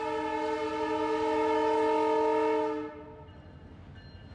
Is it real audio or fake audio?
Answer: real